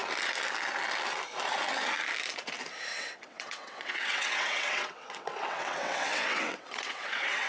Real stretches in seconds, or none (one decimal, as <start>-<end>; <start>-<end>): 0.0-2.9